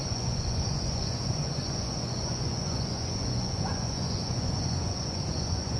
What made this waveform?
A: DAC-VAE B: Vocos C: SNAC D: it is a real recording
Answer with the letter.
B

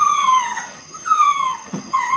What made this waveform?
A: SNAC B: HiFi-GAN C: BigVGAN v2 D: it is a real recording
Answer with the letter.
B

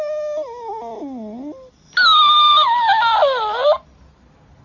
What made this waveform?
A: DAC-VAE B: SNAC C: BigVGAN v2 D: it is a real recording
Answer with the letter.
D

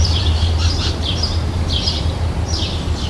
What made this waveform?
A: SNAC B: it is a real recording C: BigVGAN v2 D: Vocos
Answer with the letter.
C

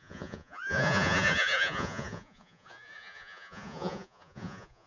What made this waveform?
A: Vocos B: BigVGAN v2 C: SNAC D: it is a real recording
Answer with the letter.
A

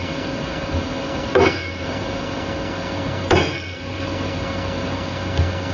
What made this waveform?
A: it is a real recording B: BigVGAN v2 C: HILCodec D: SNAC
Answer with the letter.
D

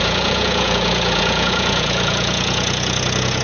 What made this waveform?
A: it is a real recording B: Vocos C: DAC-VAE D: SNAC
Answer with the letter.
B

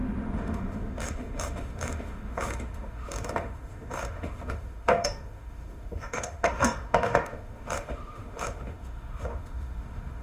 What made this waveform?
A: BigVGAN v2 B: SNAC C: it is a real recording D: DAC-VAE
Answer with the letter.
D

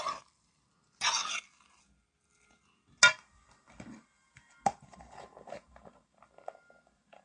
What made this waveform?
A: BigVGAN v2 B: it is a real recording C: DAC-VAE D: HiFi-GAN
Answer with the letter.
B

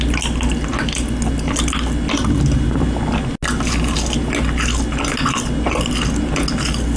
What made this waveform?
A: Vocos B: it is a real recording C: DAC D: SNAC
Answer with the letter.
B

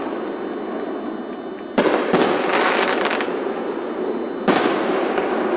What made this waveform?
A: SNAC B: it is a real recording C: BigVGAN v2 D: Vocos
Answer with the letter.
B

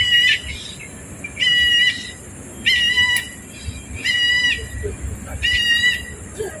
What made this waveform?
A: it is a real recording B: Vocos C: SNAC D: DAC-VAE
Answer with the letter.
A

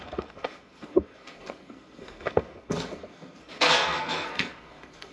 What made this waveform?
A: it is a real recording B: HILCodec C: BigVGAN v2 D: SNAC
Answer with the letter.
D